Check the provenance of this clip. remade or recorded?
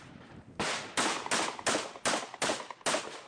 recorded